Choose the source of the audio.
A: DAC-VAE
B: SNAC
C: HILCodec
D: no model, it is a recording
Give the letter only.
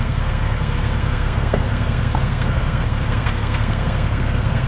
B